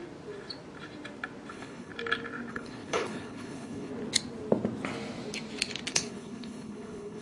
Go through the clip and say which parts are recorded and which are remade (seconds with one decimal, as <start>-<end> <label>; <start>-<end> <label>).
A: 0.0-1.5 recorded; 1.5-1.9 remade; 1.9-2.5 recorded; 2.5-3.9 remade; 3.9-5.9 recorded; 5.9-7.2 remade